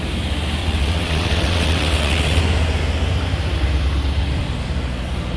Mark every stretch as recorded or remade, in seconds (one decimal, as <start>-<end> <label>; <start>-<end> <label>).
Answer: 0.0-0.6 recorded; 0.6-2.4 remade; 2.4-5.4 recorded